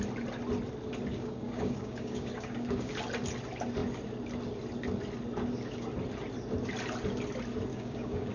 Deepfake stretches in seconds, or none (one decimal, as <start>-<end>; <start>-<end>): 1.1-2.9; 7.7-8.3